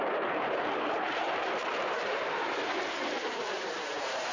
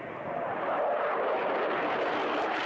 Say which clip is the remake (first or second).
first